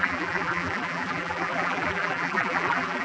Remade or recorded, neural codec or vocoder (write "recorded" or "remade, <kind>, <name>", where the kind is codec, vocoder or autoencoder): remade, vocoder, BigVGAN v2